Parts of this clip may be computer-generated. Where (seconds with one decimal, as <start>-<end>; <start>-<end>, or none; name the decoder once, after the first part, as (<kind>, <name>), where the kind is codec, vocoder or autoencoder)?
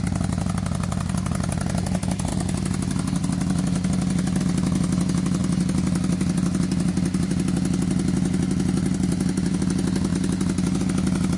none